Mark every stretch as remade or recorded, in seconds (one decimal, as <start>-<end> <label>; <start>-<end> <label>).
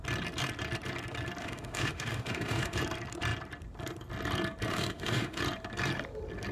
0.0-1.4 recorded; 1.4-2.8 remade; 2.8-4.7 recorded; 4.7-5.4 remade; 5.4-6.5 recorded